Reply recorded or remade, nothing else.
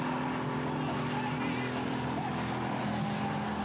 recorded